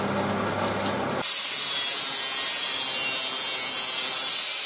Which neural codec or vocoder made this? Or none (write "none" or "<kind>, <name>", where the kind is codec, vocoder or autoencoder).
none